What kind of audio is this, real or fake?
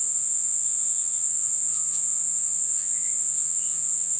fake